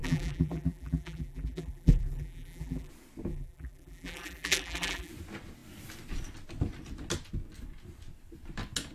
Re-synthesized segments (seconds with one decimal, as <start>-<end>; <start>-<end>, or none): 0.0-2.9; 3.3-5.1